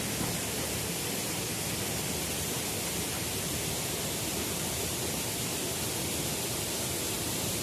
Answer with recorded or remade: recorded